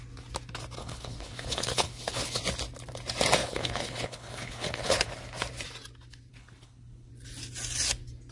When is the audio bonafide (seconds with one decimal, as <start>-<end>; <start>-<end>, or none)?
0.0-0.8; 2.4-3.4; 5.1-6.3; 7.1-8.3